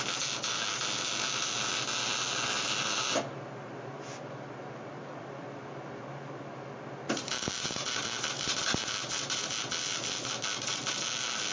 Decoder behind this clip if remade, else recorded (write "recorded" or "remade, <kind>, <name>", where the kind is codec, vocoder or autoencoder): recorded